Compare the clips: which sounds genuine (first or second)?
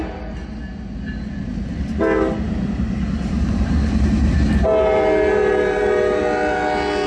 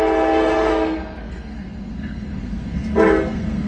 first